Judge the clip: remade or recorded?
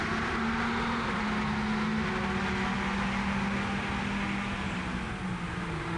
recorded